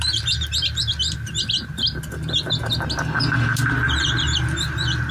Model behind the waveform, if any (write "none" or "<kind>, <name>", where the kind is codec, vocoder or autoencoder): none